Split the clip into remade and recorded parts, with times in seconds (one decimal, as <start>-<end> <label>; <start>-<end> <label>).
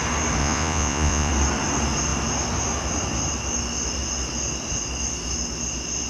0.0-0.4 recorded; 0.4-1.3 remade; 1.3-6.1 recorded